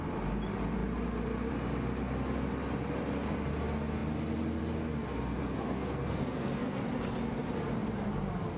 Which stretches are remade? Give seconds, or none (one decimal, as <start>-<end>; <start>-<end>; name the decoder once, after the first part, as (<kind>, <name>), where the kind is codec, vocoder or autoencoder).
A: 5.4-6.8 (codec, SNAC)